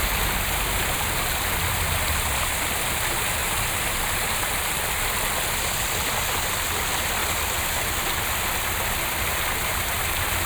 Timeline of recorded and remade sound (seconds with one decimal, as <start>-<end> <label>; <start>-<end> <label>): 0.0-10.5 recorded